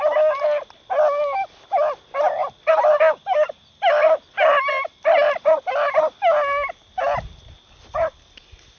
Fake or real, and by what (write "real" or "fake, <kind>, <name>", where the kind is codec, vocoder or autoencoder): real